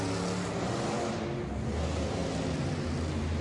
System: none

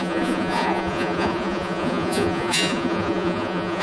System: vocoder, Vocos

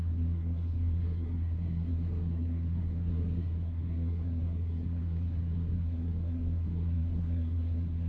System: codec, SNAC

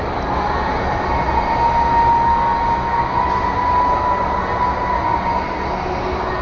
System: none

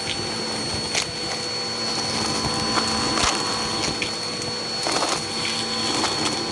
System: none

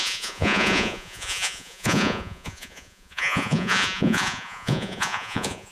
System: vocoder, Vocos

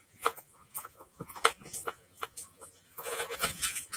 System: vocoder, Vocos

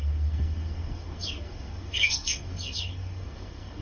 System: codec, SNAC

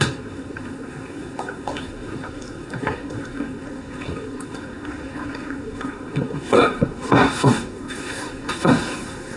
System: codec, SNAC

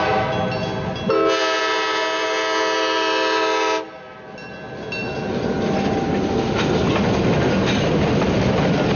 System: none